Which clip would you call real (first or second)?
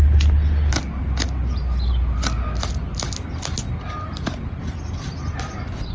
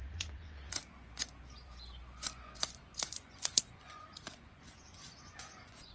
first